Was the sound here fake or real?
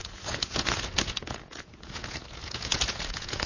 fake